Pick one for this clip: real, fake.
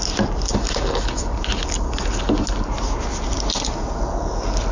real